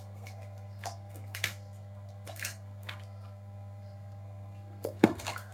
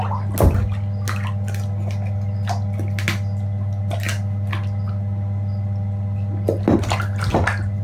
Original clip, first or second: second